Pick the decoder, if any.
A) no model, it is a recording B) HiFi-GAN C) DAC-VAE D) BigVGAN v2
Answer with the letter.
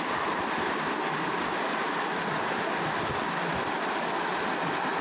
A